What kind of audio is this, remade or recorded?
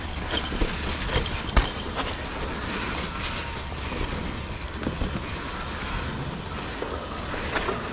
recorded